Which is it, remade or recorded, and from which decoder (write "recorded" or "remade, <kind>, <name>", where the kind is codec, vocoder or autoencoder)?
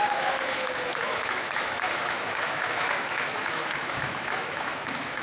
remade, autoencoder, DAC-VAE